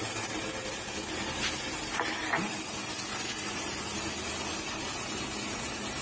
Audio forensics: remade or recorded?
recorded